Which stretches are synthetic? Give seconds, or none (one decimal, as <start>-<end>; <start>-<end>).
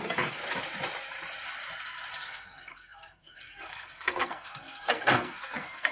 0.0-0.4; 2.1-5.9